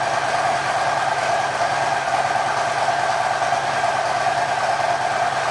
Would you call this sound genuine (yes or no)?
yes